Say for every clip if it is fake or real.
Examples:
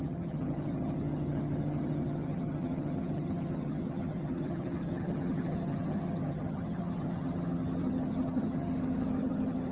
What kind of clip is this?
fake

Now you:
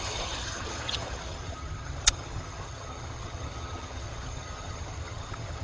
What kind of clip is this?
fake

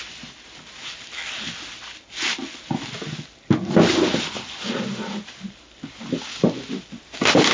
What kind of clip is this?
real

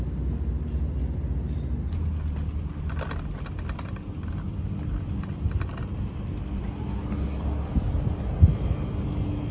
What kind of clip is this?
real